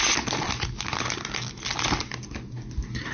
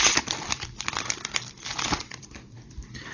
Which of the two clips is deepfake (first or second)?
second